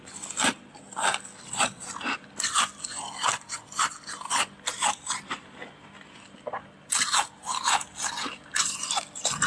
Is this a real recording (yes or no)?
yes